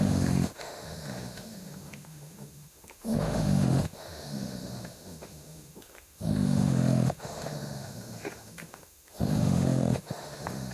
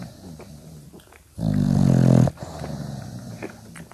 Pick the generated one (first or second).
first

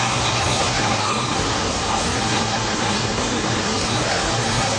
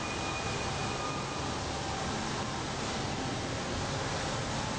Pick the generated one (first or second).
first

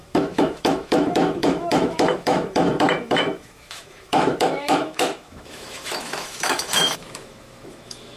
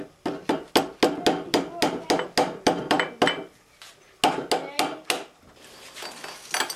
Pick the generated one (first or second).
first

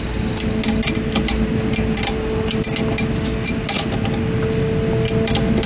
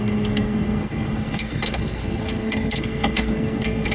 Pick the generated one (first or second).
second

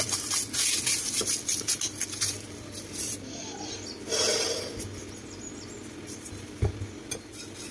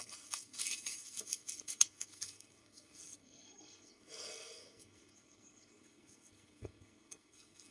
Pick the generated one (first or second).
second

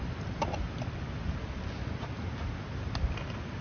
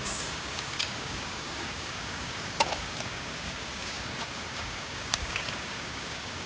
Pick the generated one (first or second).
second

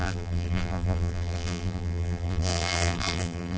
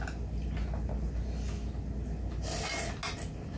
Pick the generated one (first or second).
first